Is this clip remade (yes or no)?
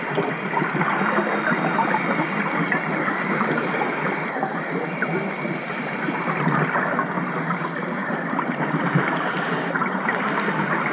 no